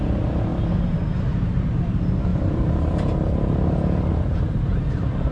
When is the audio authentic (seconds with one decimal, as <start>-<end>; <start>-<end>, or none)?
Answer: 0.5-1.2